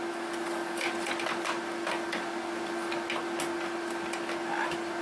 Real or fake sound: real